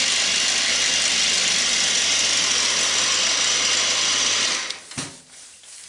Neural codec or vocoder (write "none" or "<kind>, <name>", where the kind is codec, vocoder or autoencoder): none